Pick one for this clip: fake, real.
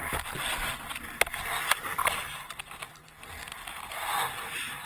real